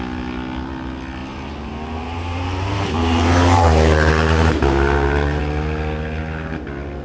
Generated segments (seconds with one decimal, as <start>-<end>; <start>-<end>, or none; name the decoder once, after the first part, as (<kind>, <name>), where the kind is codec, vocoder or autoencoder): 1.2-5.4 (vocoder, BigVGAN v2)